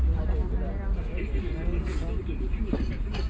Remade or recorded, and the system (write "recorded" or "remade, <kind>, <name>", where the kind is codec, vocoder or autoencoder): remade, vocoder, BigVGAN v2